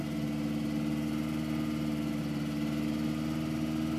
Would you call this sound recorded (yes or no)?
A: yes